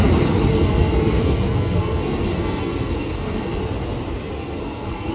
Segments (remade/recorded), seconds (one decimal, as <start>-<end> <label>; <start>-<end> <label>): 0.0-0.5 recorded; 0.5-3.6 remade; 3.6-4.2 recorded; 4.2-5.1 remade